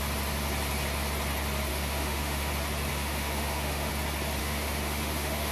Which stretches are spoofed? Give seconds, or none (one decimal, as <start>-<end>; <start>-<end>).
1.7-2.5; 2.9-3.9; 4.4-5.5